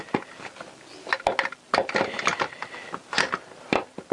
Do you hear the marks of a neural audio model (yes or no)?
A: no